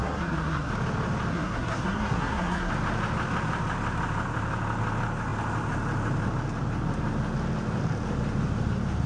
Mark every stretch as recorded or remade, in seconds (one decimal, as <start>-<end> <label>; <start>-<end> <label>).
0.0-0.7 remade; 0.7-1.3 recorded; 1.3-2.7 remade; 2.7-9.1 recorded

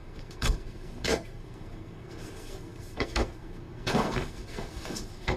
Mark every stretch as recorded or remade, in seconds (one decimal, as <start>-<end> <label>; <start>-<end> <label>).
0.0-5.4 remade